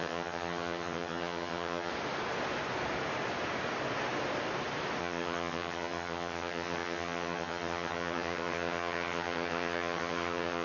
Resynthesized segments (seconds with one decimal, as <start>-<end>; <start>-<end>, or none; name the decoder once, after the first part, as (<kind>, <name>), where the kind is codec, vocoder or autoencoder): 0.0-1.9 (vocoder, HiFi-GAN); 5.0-10.6